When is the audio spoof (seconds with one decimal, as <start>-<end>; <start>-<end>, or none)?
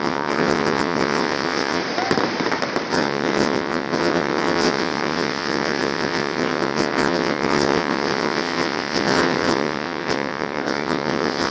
0.0-1.8; 2.9-11.5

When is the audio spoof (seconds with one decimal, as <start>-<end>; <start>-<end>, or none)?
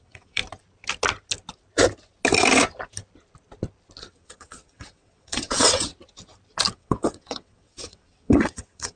0.0-0.4; 4.0-5.9; 6.7-9.0